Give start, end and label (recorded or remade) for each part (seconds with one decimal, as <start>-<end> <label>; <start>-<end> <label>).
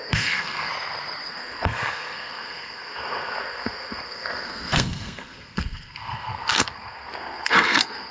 0.0-0.7 remade; 0.7-1.3 recorded; 1.3-8.1 remade